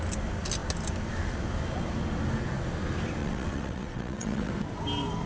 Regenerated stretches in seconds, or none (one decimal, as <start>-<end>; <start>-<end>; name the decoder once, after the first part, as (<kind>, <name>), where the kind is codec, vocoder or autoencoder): 3.2-4.5 (vocoder, WaveNeXt)